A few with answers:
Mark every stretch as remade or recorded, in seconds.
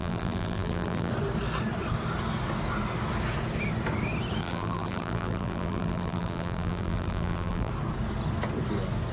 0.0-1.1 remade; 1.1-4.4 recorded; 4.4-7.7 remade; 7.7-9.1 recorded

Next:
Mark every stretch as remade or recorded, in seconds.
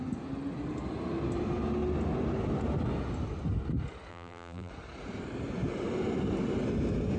0.0-4.1 recorded; 4.1-4.7 remade; 4.7-7.2 recorded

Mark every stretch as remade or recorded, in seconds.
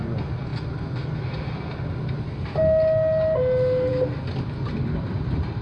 0.0-5.6 recorded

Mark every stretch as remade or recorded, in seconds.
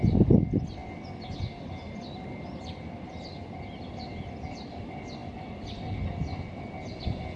0.0-7.4 recorded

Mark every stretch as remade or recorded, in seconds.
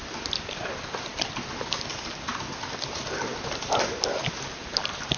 0.0-3.3 remade; 3.3-4.7 recorded; 4.7-5.2 remade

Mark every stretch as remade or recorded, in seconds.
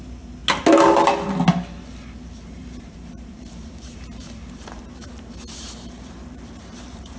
0.0-0.4 remade; 0.4-2.5 recorded; 2.5-7.2 remade